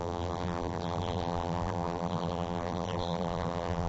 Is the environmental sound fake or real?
fake